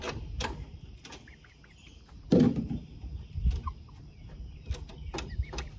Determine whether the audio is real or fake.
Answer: real